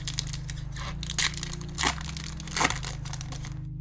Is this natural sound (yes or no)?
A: yes